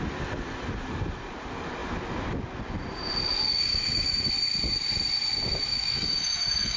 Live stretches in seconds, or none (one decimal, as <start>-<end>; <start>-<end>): 0.0-3.7; 4.3-5.7

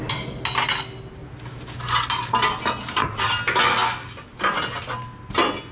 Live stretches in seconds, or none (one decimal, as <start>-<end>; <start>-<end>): 0.0-5.7